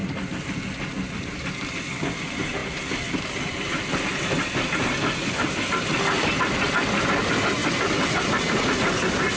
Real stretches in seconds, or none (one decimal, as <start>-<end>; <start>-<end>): 0.0-9.4